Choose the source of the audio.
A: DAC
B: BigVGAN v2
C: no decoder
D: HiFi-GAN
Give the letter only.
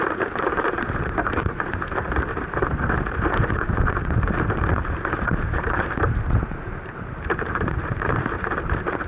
B